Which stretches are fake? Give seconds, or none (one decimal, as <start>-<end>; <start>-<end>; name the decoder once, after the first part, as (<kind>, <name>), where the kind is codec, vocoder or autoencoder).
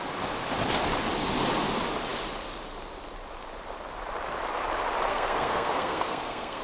5.1-6.6 (codec, SNAC)